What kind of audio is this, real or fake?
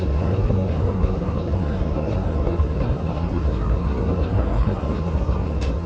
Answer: fake